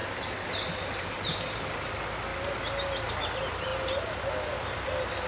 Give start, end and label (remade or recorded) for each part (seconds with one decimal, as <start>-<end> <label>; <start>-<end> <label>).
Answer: 0.0-5.3 recorded